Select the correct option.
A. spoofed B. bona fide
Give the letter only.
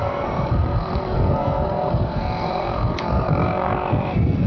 A